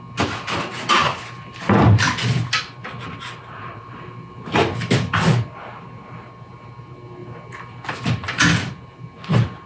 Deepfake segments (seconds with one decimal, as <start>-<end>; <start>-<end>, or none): none